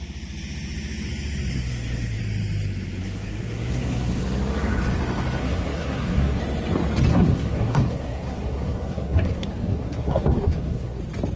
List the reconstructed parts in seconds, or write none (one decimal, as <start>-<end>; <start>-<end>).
1.5-2.2; 3.0-4.2; 5.4-6.4; 7.1-11.0